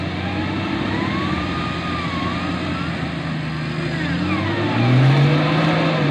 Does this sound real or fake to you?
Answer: real